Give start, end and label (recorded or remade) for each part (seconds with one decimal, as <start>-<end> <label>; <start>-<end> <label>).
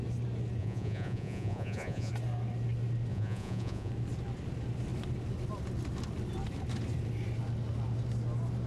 0.0-0.6 recorded; 0.6-2.1 remade; 2.1-3.1 recorded; 3.1-3.9 remade; 3.9-8.7 recorded